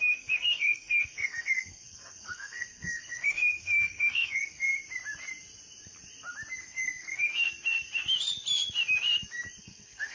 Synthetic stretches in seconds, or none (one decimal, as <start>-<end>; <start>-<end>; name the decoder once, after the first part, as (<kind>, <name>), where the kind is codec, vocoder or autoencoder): 0.0-4.7 (codec, SNAC); 6.6-7.3; 9.6-10.1